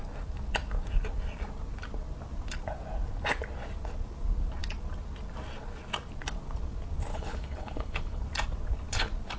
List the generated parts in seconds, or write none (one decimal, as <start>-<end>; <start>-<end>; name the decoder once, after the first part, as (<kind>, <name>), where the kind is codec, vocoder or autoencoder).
7.1-8.2 (codec, HILCodec)